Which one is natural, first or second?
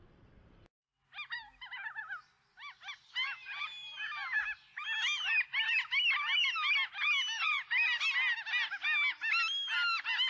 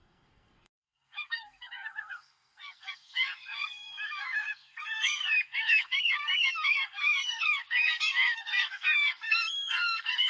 first